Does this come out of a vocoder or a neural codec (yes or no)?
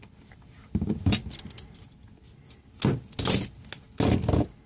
no